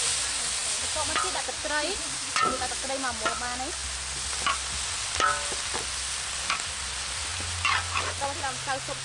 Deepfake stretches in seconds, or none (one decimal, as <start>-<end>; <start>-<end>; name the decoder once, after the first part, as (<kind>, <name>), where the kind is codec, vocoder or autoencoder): none